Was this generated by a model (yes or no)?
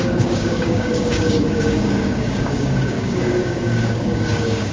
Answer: yes